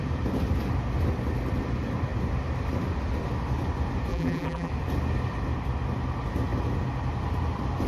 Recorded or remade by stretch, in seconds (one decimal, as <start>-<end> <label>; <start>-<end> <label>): 0.0-4.1 recorded; 4.1-4.7 remade; 4.7-7.9 recorded